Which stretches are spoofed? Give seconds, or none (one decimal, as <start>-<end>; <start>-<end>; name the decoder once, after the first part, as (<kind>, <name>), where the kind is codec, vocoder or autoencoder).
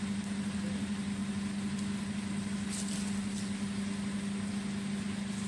none